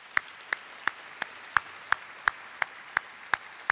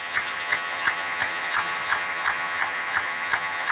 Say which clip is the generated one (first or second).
second